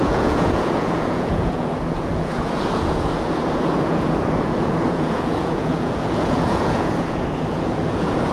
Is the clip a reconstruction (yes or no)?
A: yes